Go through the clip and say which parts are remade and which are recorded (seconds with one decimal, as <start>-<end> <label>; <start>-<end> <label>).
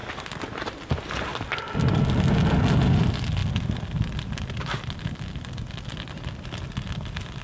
0.0-7.4 recorded